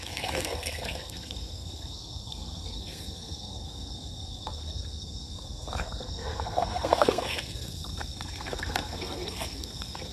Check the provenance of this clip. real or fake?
fake